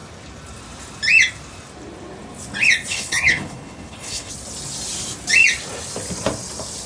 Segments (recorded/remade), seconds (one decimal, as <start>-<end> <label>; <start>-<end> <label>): 0.0-2.9 recorded; 2.9-4.3 remade; 4.3-6.9 recorded